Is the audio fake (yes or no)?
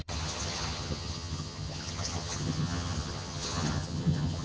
yes